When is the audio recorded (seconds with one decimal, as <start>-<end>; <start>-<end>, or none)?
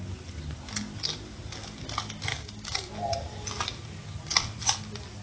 0.0-2.3; 2.9-5.2